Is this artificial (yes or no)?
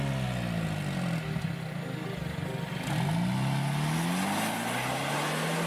no